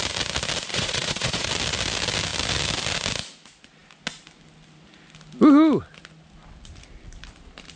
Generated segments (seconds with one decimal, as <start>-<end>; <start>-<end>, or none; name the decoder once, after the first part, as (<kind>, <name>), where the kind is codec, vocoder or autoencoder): 0.7-1.5 (vocoder, Vocos)